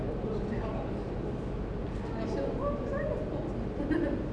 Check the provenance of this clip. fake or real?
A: real